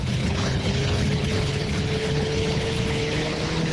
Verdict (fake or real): fake